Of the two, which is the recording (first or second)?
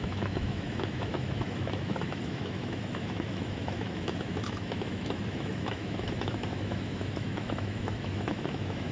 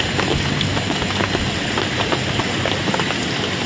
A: second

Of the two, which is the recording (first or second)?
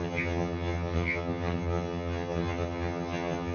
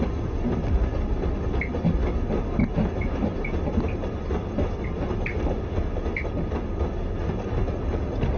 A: second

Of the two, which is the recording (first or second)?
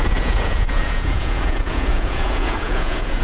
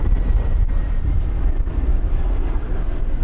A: second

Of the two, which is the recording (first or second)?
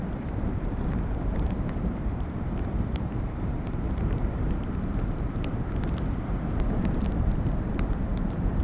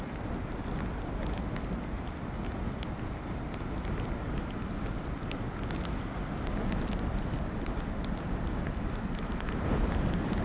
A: second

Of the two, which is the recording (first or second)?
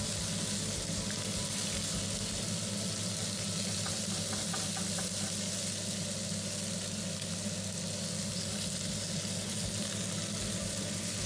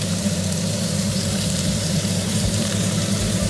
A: first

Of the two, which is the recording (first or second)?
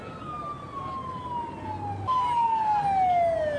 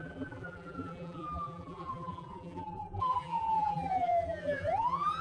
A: first